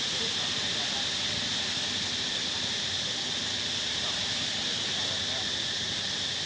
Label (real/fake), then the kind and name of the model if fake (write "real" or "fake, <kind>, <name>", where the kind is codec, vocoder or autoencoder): real